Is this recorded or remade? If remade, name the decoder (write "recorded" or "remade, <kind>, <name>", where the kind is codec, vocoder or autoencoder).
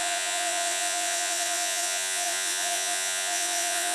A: remade, vocoder, Vocos